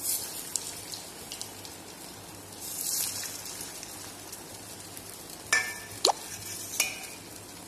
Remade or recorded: recorded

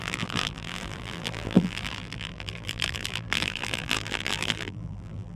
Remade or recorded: remade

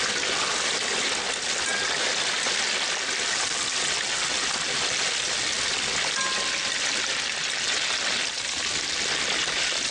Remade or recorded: recorded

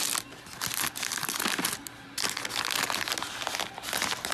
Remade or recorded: recorded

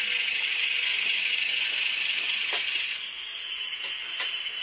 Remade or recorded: recorded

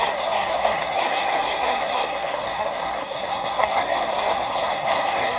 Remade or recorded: remade